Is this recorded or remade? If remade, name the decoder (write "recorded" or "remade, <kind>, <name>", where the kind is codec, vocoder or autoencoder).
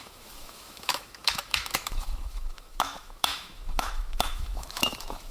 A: remade, autoencoder, DAC-VAE